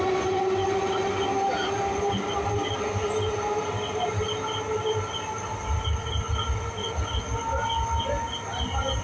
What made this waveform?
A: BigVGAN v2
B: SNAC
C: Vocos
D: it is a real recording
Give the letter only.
D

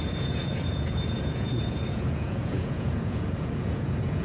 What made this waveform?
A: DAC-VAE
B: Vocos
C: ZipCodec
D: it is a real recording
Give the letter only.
B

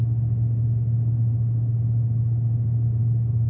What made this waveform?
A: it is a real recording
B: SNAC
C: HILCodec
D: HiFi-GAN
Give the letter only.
A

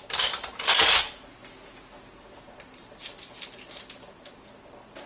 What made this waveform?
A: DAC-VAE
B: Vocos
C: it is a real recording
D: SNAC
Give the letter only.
C